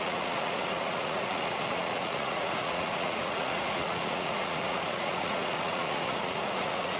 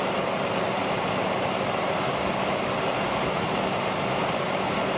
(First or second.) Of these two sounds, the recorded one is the second